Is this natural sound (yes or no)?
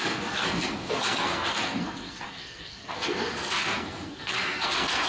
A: no